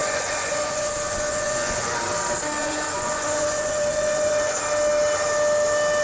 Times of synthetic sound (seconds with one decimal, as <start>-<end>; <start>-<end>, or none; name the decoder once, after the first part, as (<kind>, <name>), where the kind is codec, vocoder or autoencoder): 0.0-2.0 (vocoder, Vocos); 2.6-4.6